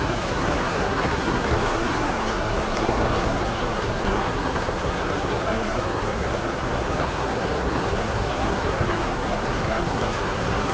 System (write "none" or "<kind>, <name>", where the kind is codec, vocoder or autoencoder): codec, SNAC